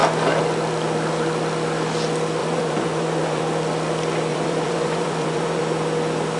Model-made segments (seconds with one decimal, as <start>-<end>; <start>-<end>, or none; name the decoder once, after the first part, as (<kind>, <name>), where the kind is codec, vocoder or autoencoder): 2.4-3.4 (vocoder, Vocos); 4.3-5.6